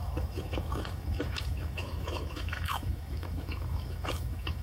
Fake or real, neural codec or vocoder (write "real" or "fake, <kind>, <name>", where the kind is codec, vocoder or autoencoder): fake, autoencoder, DAC-VAE